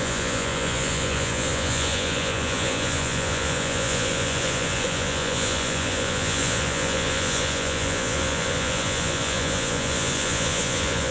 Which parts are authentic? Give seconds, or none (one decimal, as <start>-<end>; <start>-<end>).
none